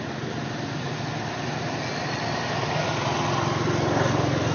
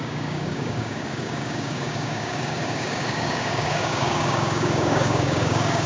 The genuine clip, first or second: first